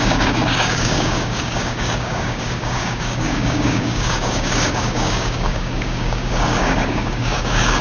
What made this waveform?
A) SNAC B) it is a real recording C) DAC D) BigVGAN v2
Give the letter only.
C